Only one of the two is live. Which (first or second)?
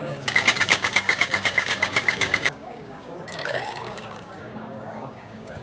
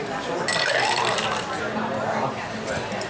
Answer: second